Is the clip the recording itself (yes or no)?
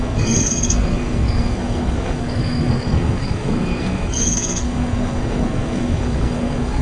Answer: no